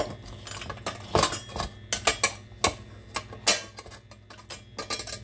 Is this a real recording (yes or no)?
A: yes